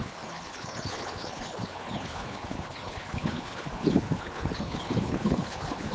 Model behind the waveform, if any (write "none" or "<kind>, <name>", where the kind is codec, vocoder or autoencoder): codec, HILCodec